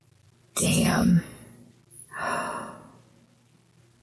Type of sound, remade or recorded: recorded